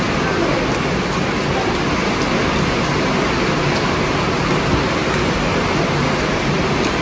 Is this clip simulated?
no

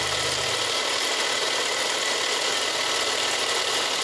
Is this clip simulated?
no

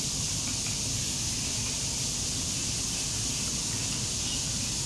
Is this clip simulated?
no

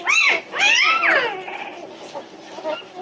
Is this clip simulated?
no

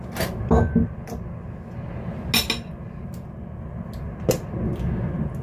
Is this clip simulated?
no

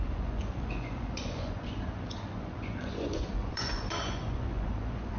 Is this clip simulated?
yes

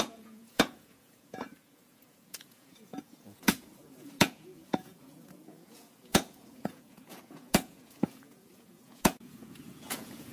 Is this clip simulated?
yes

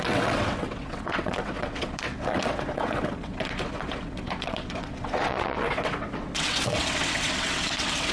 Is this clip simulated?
yes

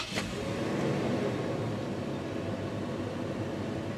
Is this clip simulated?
no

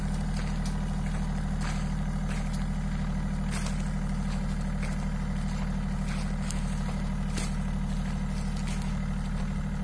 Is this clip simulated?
no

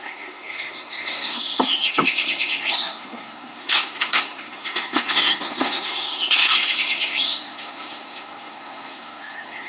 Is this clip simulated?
yes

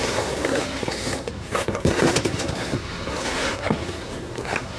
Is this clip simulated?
yes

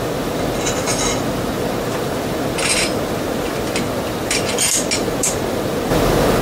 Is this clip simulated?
no